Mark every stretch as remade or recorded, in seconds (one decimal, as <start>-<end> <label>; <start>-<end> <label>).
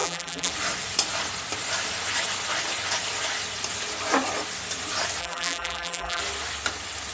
0.0-0.5 remade; 0.5-5.2 recorded; 5.2-6.2 remade; 6.2-7.1 recorded